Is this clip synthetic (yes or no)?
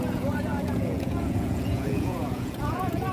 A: yes